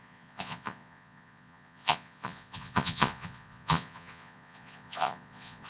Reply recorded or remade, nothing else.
remade